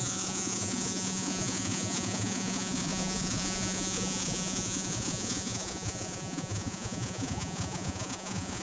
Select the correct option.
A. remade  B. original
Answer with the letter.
A